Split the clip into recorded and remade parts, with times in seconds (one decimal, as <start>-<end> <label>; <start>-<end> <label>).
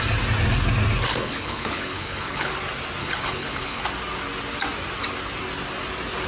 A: 0.0-1.1 recorded; 1.1-2.5 remade; 2.5-3.0 recorded; 3.0-3.8 remade; 3.8-6.3 recorded